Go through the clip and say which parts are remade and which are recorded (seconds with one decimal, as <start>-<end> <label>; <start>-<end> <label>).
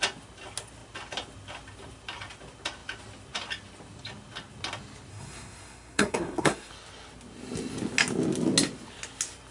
0.0-5.1 recorded; 5.1-6.7 remade; 6.7-9.5 recorded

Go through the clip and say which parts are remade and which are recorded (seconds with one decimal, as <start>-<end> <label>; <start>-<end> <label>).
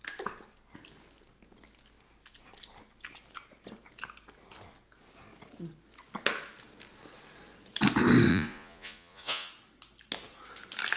0.0-8.3 recorded; 8.3-9.5 remade; 9.5-11.0 recorded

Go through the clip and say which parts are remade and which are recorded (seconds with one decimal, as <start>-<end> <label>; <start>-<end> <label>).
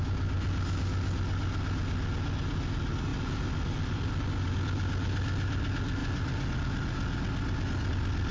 0.0-8.3 recorded